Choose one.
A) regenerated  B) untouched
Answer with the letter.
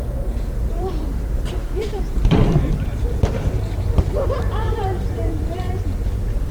A